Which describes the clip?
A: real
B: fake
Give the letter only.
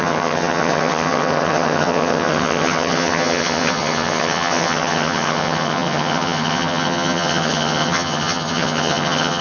B